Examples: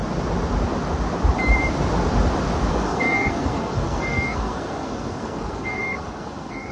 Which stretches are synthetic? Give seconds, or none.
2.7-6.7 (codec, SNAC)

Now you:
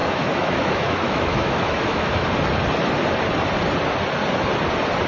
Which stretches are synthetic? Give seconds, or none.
0.0-2.3 (autoencoder, DAC-VAE)

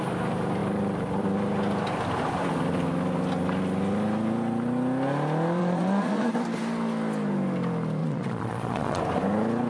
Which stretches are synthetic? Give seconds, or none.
5.6-6.3 (vocoder, Vocos); 8.0-9.0